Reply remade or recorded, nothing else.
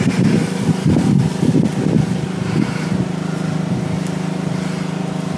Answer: remade